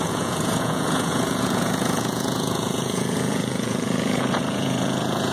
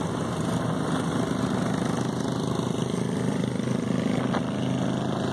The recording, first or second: second